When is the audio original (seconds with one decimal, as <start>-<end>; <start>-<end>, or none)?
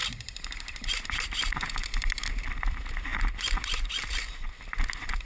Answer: 0.9-3.1; 4.5-5.3